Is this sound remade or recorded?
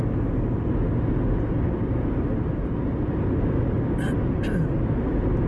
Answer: recorded